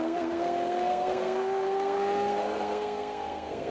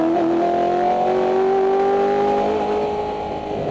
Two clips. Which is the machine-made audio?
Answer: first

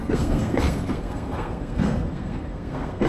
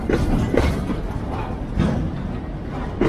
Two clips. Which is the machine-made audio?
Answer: first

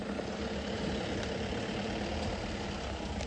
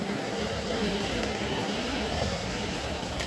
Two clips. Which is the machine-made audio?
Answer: second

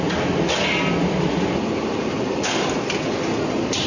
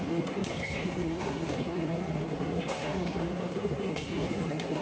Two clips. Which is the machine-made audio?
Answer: second